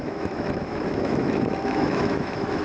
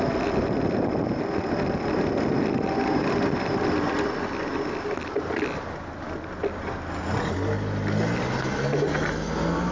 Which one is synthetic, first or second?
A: first